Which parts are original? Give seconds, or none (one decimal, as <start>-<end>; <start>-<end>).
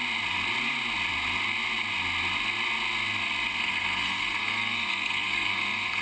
0.0-3.6